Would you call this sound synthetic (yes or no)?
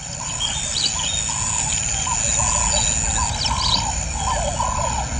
no